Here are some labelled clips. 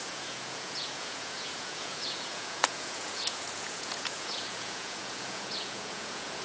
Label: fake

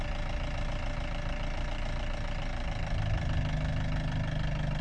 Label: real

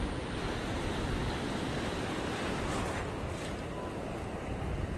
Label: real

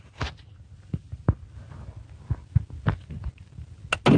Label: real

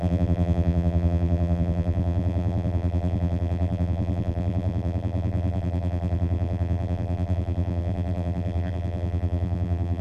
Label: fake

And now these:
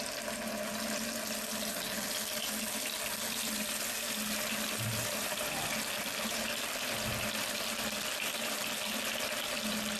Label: real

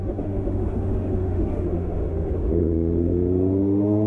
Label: fake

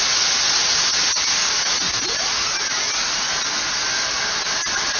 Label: real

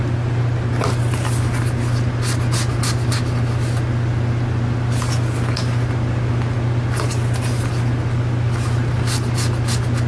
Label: real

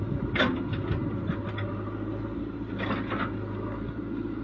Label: real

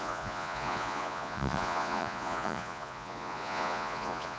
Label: fake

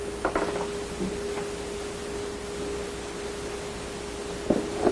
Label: real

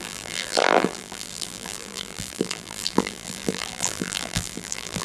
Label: fake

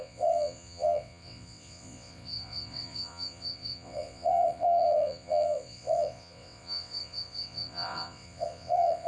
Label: fake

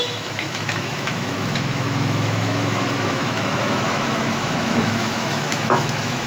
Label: fake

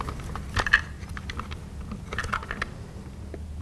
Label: real